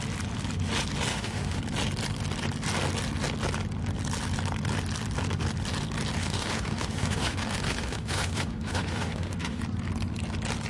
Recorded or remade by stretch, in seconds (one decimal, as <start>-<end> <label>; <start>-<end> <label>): 0.0-1.1 recorded; 1.1-1.6 remade; 1.6-6.2 recorded; 6.2-9.6 remade; 9.6-10.7 recorded